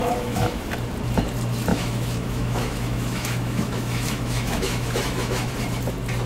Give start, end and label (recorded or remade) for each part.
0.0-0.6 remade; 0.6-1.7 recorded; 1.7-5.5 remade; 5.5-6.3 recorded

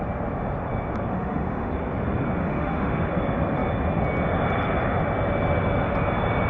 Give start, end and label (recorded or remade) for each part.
0.0-1.1 recorded; 1.1-1.7 remade; 1.7-2.4 recorded; 2.4-3.1 remade; 3.1-6.5 recorded

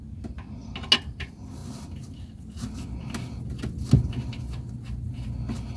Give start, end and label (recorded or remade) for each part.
0.0-5.8 recorded

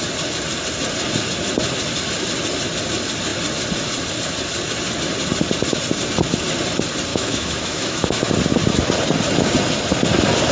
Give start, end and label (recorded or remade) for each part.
0.0-7.1 recorded; 7.1-8.3 remade; 8.3-10.5 recorded